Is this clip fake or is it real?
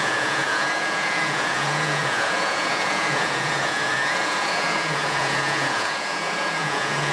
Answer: fake